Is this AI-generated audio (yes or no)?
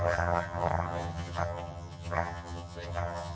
yes